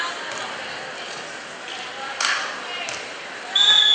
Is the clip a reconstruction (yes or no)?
no